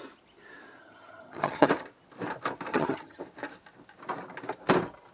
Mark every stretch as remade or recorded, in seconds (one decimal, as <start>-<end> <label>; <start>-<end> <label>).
0.0-0.8 recorded; 0.8-1.7 remade; 1.7-2.7 recorded; 2.7-3.2 remade; 3.2-5.1 recorded